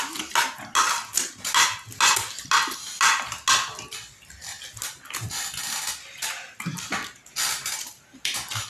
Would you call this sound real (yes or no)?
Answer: yes